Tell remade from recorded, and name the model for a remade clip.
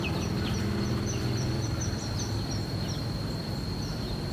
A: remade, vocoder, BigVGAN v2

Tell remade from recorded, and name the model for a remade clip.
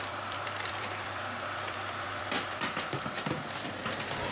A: remade, vocoder, BigVGAN v2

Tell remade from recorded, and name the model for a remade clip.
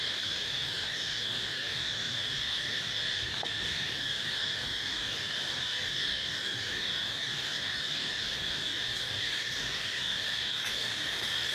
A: remade, codec, DAC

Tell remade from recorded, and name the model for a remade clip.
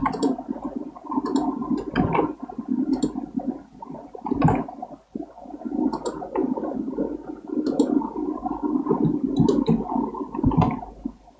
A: recorded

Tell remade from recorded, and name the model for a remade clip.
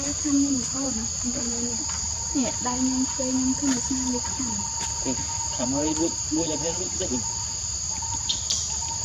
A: remade, vocoder, BigVGAN v2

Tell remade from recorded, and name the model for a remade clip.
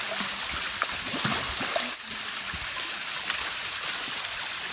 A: recorded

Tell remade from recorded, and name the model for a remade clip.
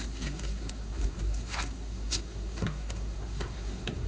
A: remade, codec, SNAC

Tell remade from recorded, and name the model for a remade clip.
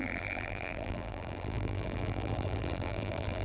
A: remade, vocoder, BigVGAN v2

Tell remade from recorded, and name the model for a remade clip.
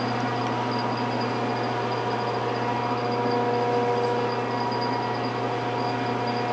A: recorded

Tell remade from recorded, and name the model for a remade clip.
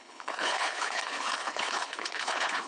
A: remade, codec, HILCodec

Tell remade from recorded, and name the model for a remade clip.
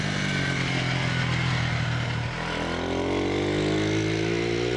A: recorded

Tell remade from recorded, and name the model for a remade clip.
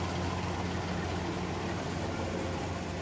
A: recorded